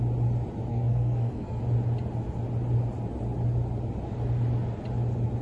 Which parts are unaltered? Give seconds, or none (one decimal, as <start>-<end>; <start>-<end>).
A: 0.0-0.7; 1.6-5.4